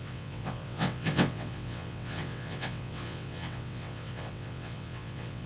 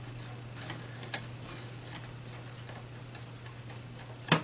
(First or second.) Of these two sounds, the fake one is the first